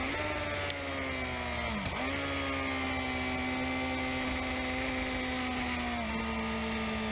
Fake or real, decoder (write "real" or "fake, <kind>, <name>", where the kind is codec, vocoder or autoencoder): real